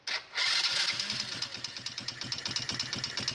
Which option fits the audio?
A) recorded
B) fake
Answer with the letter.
A